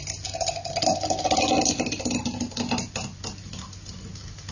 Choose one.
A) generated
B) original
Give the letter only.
B